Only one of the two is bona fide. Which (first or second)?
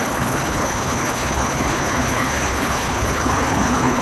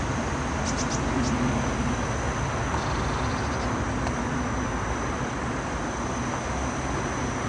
second